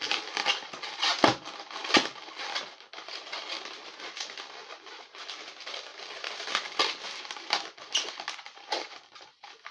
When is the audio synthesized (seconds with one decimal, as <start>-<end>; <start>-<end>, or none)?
none